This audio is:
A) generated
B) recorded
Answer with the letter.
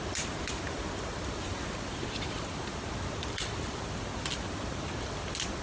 B